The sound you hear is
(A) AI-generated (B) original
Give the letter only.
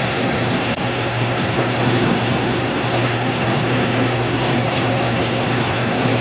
A